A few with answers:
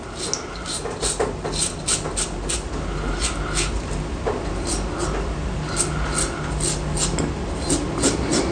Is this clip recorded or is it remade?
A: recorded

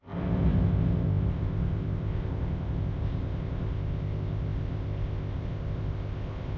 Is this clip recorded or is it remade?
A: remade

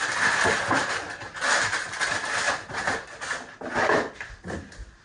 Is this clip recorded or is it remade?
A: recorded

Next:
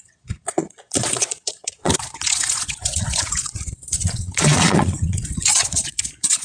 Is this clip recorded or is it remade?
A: remade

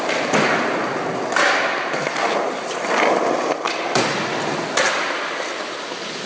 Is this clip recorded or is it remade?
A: recorded